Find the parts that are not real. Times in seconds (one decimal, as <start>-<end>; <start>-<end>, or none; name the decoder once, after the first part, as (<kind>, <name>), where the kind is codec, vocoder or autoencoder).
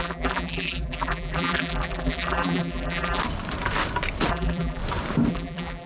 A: 0.0-3.2 (vocoder, BigVGAN v2); 4.3-4.8; 5.3-5.9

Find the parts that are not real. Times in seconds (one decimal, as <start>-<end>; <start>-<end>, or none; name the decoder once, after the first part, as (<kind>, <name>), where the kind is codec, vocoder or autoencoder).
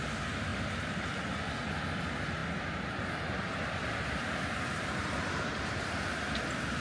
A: 0.5-1.2 (vocoder, BigVGAN v2); 2.4-6.3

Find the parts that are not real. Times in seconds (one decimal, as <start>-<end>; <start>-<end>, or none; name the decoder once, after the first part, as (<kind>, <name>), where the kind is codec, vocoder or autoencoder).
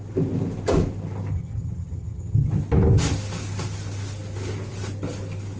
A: 1.3-2.5 (vocoder, HiFi-GAN)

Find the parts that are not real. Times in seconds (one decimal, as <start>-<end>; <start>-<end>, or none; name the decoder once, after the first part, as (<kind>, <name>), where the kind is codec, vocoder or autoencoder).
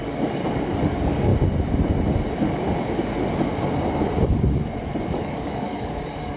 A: 0.0-1.3 (codec, DAC); 5.1-6.4